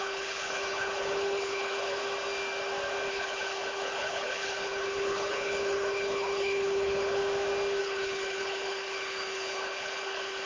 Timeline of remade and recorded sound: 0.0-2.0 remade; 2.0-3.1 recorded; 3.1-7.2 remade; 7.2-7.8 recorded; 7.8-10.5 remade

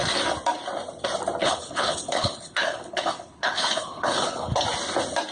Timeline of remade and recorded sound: 0.0-1.4 recorded; 1.4-4.6 remade; 4.6-5.3 recorded

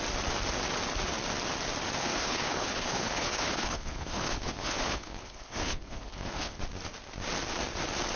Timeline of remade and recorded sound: 0.0-2.0 recorded; 2.0-6.6 remade; 6.6-8.2 recorded

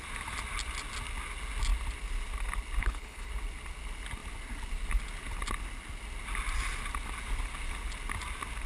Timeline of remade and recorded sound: 0.0-2.8 recorded; 2.8-3.3 remade; 3.3-8.7 recorded

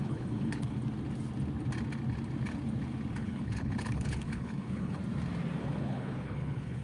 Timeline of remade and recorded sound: 0.0-0.8 remade; 0.8-3.2 recorded; 3.2-5.0 remade; 5.0-5.6 recorded; 5.6-6.8 remade

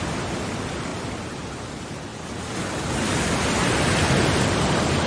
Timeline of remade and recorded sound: 0.0-5.1 recorded

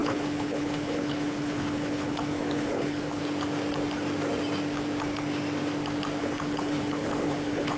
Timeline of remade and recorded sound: 0.0-3.2 remade; 3.2-6.2 recorded; 6.2-7.8 remade